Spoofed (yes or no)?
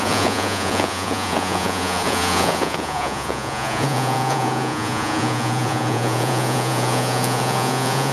yes